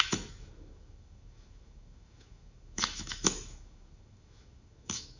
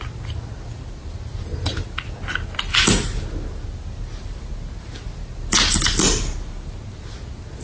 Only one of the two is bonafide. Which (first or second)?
second